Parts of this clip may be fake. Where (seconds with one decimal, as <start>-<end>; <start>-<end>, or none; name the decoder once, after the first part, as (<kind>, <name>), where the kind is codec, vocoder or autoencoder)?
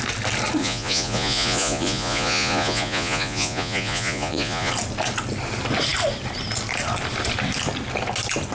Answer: 0.6-4.7 (vocoder, Vocos)